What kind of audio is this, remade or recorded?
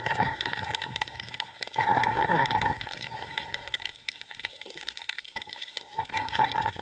remade